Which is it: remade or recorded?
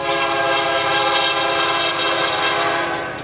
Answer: recorded